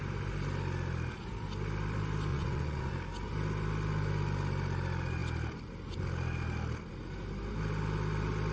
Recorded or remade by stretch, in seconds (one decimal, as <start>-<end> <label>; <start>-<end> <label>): 0.0-2.3 recorded; 2.3-2.9 remade; 2.9-8.5 recorded